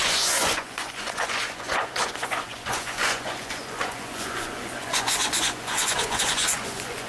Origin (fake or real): fake